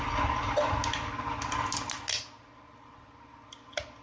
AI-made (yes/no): no